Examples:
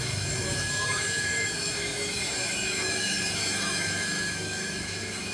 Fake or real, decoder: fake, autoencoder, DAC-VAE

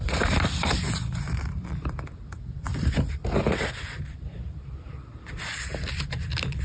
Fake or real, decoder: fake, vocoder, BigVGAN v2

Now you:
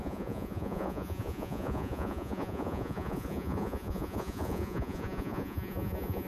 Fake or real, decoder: fake, vocoder, Vocos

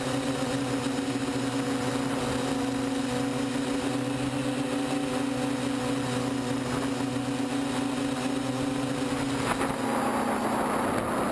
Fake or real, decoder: real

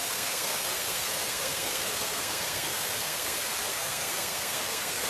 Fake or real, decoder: fake, codec, SNAC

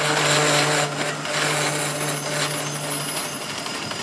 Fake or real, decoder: real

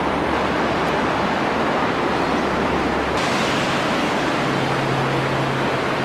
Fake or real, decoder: real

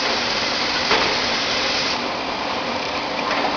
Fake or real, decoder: fake, vocoder, BigVGAN v2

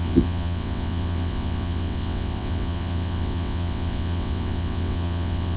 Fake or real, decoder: fake, vocoder, WaveNeXt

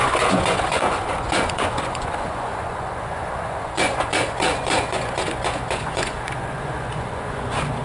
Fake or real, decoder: fake, vocoder, Vocos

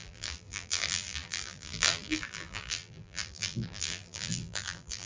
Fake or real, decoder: fake, vocoder, BigVGAN v2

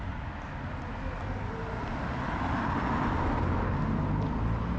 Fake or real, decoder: real